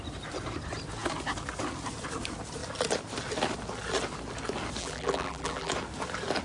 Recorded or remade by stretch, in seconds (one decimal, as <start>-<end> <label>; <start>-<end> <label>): 0.0-4.8 recorded; 4.8-5.7 remade; 5.7-6.4 recorded